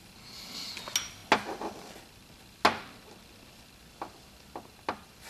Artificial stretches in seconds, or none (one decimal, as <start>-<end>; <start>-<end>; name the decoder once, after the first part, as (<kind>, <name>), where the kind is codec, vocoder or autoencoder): none